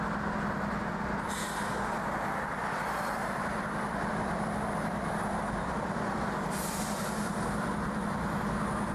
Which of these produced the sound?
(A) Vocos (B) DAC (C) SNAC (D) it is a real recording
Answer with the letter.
D